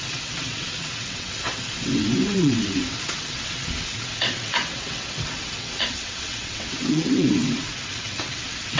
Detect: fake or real fake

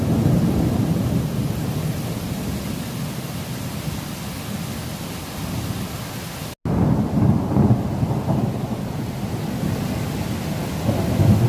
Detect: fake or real real